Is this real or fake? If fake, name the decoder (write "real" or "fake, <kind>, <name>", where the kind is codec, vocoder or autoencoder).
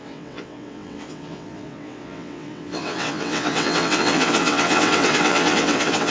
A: fake, vocoder, WaveNeXt